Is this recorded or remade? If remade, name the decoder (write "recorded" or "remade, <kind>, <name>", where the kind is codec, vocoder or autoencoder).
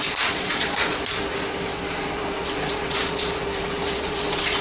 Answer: remade, vocoder, Vocos